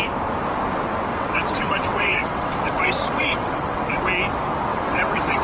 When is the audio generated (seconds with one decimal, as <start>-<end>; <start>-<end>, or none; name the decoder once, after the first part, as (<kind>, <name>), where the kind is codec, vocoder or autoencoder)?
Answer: 1.1-4.0 (vocoder, WaveNeXt); 4.7-5.4